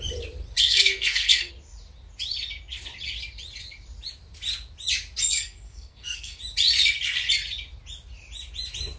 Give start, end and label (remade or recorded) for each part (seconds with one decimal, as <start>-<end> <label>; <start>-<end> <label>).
0.0-0.6 recorded; 0.6-1.5 remade; 1.5-5.3 recorded; 5.3-6.4 remade; 6.4-9.0 recorded